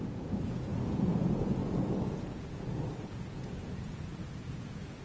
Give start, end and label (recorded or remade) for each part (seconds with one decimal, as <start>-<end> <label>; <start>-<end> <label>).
0.0-5.0 remade